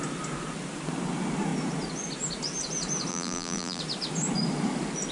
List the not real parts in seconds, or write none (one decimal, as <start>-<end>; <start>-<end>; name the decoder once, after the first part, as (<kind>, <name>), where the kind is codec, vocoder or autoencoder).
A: 3.1-3.8 (vocoder, BigVGAN v2)